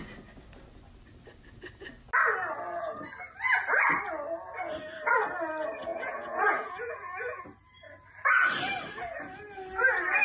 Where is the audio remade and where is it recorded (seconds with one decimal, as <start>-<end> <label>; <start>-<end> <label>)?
0.0-5.9 recorded; 5.9-7.4 remade; 7.4-10.2 recorded